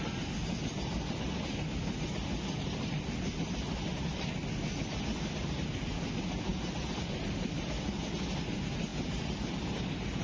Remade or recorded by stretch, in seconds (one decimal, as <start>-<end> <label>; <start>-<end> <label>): 0.0-10.2 recorded